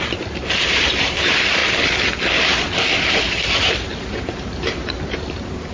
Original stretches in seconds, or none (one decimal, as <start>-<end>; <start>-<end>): 1.6-3.2